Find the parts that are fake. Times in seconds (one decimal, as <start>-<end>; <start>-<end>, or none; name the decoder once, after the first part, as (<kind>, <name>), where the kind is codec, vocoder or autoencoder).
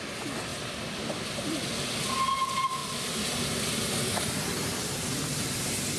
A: none